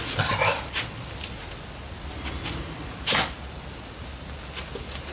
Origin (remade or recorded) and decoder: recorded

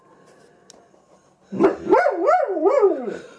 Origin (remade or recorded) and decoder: recorded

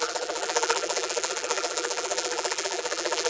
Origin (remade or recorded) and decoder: remade, vocoder, BigVGAN v2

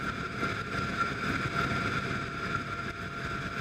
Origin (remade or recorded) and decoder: recorded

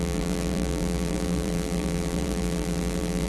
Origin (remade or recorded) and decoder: remade, vocoder, BigVGAN v2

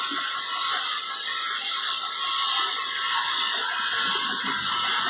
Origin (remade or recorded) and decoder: remade, vocoder, BigVGAN v2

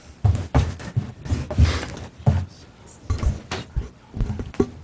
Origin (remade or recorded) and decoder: recorded